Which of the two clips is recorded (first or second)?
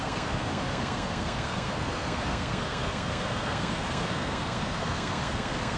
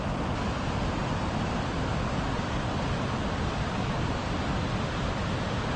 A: second